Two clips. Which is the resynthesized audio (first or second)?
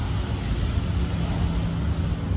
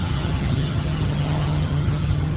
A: second